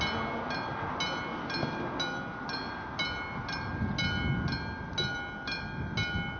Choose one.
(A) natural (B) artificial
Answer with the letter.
A